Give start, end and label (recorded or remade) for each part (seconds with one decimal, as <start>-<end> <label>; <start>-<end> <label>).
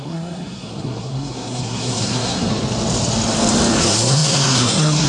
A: 0.0-2.5 remade; 2.5-3.8 recorded; 3.8-5.1 remade